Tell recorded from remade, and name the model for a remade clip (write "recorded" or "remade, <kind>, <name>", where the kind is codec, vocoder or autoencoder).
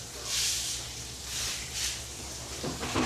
remade, vocoder, BigVGAN v2